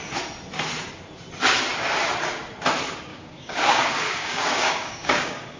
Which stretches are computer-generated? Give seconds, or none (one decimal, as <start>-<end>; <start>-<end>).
3.1-5.6